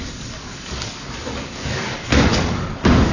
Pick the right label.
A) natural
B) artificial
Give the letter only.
B